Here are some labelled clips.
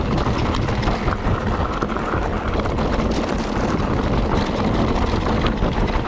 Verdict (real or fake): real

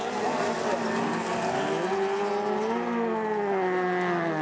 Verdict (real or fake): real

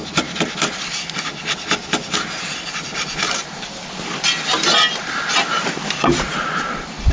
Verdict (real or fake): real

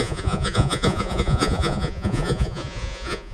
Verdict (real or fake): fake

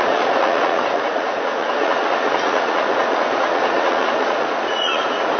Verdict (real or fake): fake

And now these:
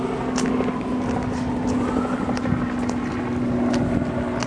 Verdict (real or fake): real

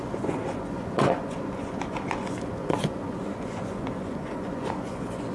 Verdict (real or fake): fake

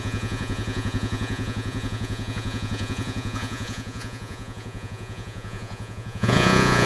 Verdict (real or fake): fake